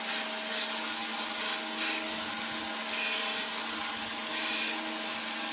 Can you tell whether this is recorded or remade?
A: recorded